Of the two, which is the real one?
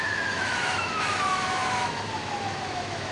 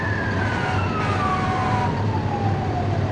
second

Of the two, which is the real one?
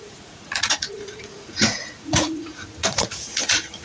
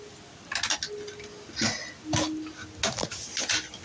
second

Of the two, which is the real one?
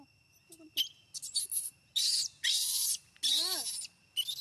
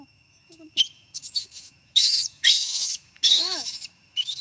first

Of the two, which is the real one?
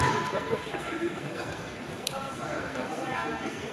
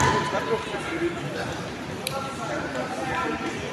second